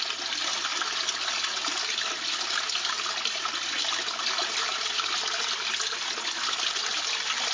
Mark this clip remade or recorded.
recorded